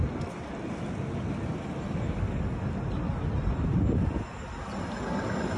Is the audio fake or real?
real